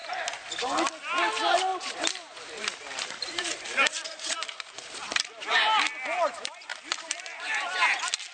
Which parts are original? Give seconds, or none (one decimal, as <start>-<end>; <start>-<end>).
0.5-1.7; 4.8-8.3